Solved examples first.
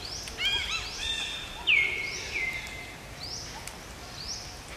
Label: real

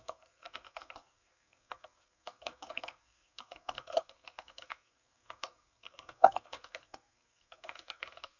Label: fake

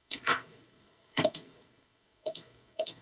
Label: fake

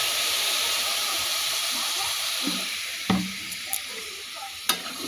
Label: fake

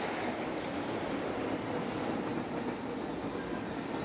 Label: real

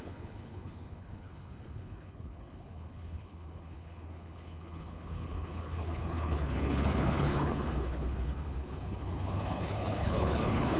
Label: fake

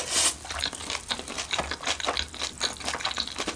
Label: real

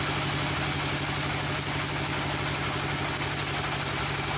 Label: real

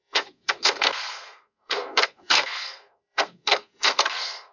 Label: fake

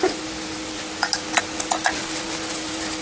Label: real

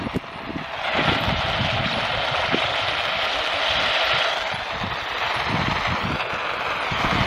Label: real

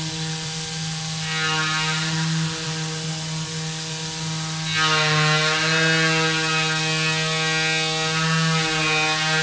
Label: real